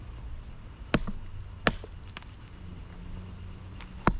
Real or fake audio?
real